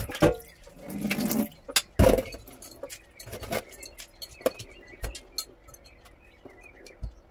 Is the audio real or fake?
real